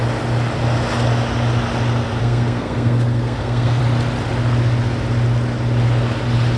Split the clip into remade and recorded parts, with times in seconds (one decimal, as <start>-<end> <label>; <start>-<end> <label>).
0.0-2.2 recorded; 2.2-3.8 remade; 3.8-6.6 recorded